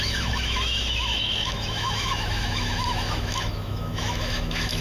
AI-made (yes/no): yes